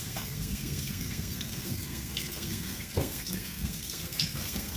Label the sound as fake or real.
fake